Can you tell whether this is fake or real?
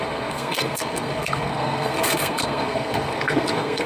fake